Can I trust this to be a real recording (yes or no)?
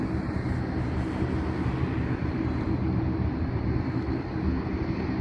yes